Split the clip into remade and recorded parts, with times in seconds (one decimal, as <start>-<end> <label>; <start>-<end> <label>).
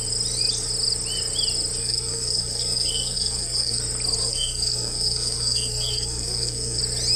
0.0-1.8 recorded; 1.8-3.8 remade; 3.8-4.2 recorded; 4.2-6.8 remade; 6.8-7.2 recorded